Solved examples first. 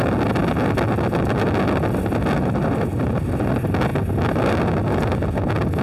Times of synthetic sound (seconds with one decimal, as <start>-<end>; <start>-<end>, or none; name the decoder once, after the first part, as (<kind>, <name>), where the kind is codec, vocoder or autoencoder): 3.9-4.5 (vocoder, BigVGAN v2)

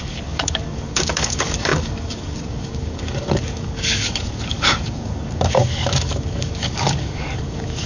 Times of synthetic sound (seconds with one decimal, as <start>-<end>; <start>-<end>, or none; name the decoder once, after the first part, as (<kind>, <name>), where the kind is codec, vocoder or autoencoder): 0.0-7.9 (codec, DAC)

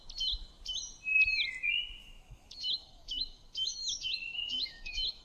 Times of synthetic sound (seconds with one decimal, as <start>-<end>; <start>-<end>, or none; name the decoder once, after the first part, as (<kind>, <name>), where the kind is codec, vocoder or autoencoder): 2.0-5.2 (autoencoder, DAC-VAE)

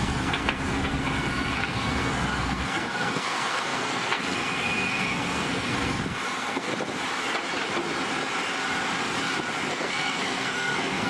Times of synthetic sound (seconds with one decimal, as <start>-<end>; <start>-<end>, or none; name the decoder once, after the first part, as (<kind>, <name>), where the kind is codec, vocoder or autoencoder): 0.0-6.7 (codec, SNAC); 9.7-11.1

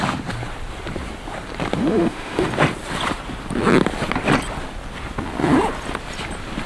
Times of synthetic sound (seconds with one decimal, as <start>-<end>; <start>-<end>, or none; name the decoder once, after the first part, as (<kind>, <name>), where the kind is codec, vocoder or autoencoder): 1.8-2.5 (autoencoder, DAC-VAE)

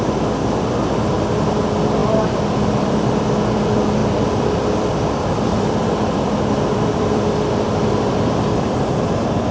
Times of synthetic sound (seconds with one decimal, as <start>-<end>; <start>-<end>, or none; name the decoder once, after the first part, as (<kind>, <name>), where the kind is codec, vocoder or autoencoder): 2.0-2.9 (vocoder, BigVGAN v2); 4.0-9.1

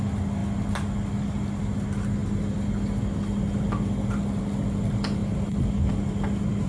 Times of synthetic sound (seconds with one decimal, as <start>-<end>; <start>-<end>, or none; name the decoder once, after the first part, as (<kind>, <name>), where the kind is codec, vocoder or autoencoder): none